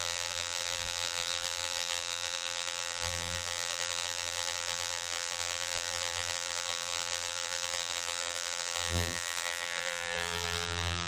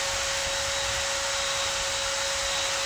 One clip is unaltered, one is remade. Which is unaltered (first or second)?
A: second